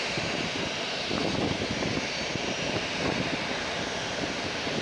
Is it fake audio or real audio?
real